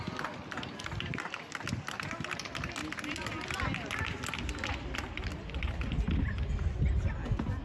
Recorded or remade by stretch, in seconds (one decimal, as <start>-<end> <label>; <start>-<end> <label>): 0.0-7.6 recorded